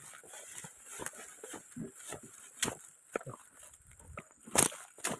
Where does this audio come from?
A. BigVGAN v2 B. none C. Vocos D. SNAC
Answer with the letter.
B